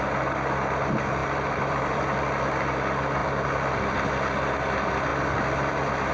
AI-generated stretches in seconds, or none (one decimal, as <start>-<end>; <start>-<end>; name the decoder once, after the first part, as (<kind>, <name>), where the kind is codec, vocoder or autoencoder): 1.2-2.4 (vocoder, BigVGAN v2); 3.2-4.1; 5.1-6.1